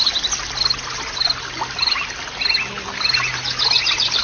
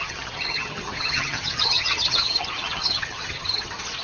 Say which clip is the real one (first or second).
first